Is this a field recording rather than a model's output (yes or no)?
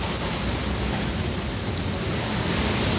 yes